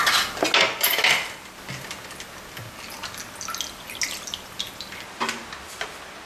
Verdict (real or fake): real